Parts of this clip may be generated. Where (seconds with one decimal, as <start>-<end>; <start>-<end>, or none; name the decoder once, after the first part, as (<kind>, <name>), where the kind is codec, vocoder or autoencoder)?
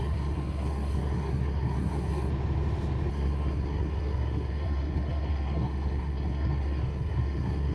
0.0-2.3 (codec, SNAC); 3.1-7.7